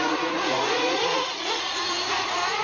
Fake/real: fake